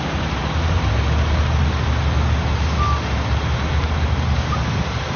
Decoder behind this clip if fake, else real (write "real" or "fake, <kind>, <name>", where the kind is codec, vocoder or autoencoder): real